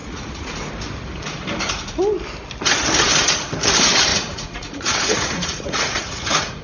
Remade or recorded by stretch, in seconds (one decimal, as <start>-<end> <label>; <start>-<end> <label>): 0.0-0.7 remade; 0.7-4.1 recorded; 4.1-6.6 remade